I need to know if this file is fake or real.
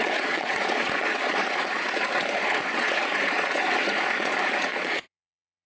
fake